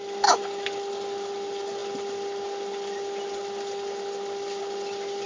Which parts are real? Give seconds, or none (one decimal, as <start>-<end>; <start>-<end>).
0.0-5.3